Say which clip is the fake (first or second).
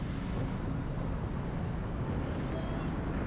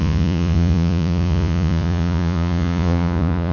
second